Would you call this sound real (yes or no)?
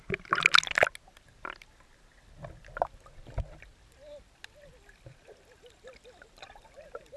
yes